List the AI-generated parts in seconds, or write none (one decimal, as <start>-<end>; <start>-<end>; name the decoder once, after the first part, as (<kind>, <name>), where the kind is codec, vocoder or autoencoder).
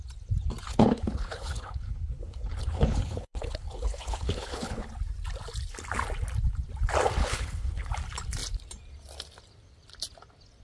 0.7-4.9 (codec, HILCodec); 7.2-7.9